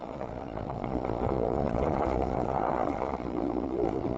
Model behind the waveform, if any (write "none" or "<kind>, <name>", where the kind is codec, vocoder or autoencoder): vocoder, Vocos